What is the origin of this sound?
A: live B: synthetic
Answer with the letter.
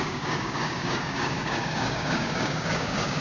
B